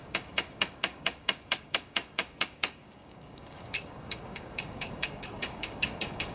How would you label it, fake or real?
fake